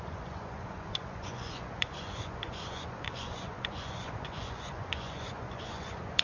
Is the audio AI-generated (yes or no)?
yes